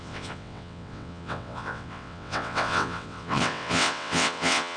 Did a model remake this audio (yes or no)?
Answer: yes